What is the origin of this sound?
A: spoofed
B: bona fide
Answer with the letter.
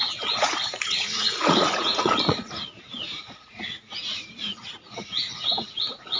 A